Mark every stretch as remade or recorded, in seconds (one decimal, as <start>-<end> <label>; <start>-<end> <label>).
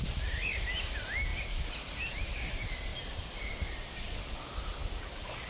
0.0-1.3 recorded; 1.3-1.9 remade; 1.9-2.9 recorded; 2.9-3.5 remade; 3.5-5.5 recorded